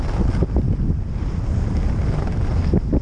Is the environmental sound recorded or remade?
recorded